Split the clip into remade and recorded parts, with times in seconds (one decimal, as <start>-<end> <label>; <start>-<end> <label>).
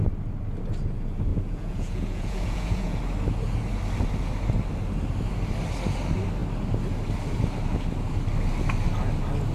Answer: 0.0-1.3 recorded; 1.3-3.0 remade; 3.0-9.5 recorded